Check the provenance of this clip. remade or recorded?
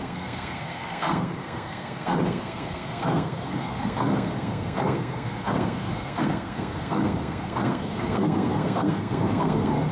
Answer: remade